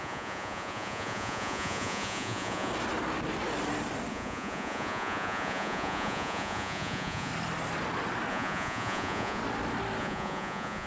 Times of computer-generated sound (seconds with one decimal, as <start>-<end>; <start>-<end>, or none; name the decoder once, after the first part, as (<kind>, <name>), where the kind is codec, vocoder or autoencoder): 0.0-2.7 (vocoder, Vocos); 4.1-7.3; 8.3-9.4; 10.0-10.9